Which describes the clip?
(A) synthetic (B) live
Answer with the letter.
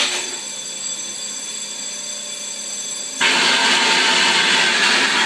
B